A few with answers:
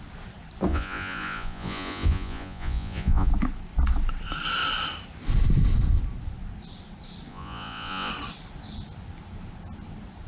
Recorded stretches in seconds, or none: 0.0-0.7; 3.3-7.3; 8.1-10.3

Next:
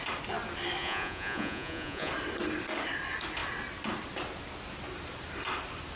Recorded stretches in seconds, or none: 0.0-0.8; 2.1-6.0

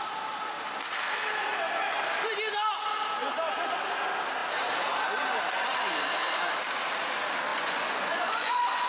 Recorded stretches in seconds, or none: 0.0-7.5

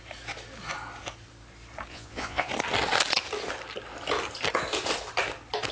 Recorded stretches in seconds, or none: 0.0-1.9; 2.5-5.7

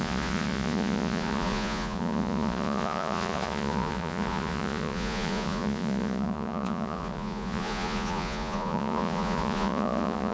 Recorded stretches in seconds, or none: none

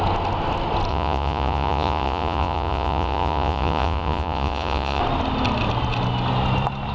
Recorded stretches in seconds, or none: 0.0-0.9; 5.0-6.9

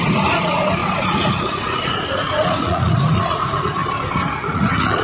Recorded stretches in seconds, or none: 3.8-4.3